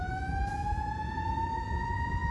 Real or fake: fake